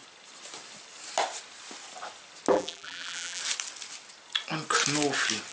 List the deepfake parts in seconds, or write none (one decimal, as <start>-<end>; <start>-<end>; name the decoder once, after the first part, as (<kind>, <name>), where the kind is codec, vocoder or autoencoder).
2.5-3.4 (vocoder, BigVGAN v2)